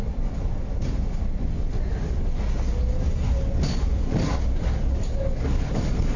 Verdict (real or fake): real